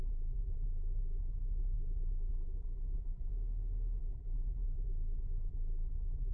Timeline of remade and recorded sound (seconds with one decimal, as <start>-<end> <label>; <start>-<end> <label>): 0.0-3.3 remade; 3.3-4.0 recorded; 4.0-6.3 remade